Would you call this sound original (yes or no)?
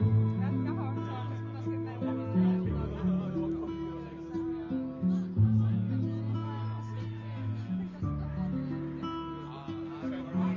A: yes